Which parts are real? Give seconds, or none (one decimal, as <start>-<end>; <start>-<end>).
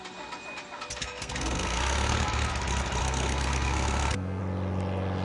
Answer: 0.0-1.0; 2.5-3.0; 4.4-5.2